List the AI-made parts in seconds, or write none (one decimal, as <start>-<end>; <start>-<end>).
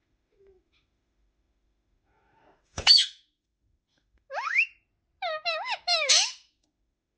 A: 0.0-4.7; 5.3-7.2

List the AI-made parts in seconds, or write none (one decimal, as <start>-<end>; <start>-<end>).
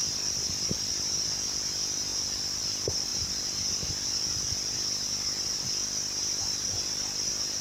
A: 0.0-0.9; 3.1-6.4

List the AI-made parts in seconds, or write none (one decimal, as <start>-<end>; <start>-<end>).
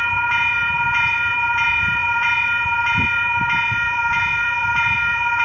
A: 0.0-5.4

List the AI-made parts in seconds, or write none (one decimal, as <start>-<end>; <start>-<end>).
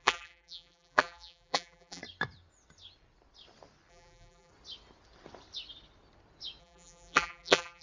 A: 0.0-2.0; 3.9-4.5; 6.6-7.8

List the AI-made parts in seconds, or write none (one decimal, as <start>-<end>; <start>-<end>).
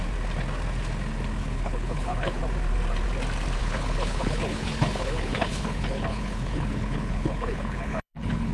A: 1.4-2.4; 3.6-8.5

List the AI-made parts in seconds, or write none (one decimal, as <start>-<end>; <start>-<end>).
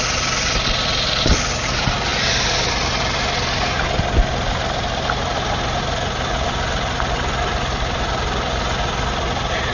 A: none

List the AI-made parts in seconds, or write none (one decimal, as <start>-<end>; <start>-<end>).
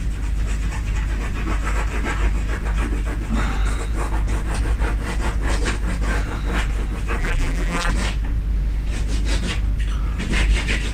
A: 7.2-7.9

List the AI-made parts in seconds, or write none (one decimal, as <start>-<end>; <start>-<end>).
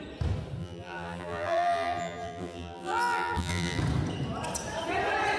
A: 0.6-3.8